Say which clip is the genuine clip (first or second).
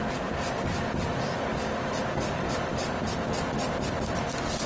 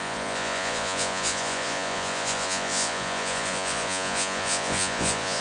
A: first